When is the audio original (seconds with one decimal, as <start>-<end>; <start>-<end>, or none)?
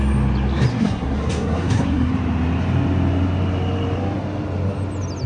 0.0-0.7; 2.1-5.3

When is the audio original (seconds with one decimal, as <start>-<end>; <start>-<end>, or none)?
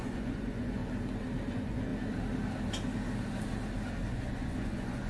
0.8-1.5; 1.9-4.1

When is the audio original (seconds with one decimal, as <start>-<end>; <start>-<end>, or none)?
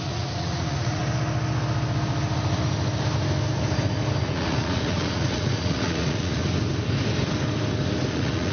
1.0-4.2; 6.4-8.1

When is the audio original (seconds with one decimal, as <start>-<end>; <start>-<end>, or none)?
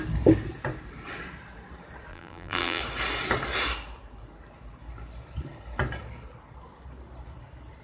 0.0-2.1; 2.8-7.8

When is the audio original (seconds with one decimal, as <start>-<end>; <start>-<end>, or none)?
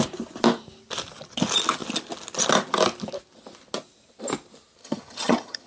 0.0-4.8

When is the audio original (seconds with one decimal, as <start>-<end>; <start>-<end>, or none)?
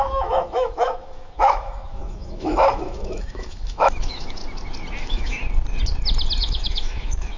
4.4-5.0; 5.4-6.4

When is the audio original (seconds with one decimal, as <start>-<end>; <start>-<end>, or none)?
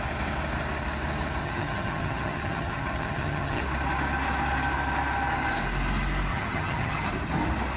0.0-1.4; 3.6-6.3; 7.1-7.8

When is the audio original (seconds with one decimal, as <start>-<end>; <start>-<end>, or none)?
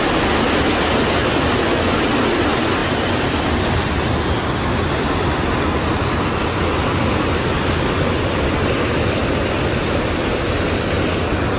0.0-11.6